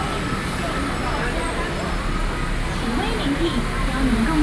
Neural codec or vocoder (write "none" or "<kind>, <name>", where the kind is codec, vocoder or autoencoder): none